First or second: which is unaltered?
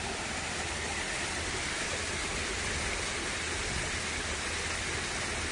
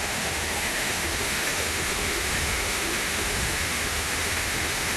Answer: first